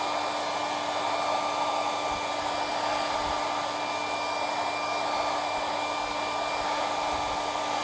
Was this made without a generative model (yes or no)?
yes